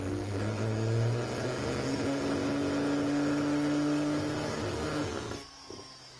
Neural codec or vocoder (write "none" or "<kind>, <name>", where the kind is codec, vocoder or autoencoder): none